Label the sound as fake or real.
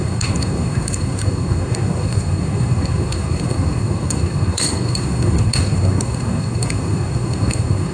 fake